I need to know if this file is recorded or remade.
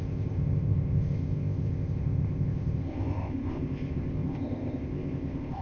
remade